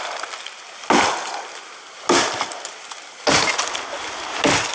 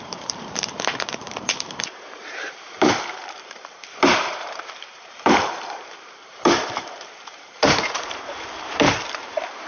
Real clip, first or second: first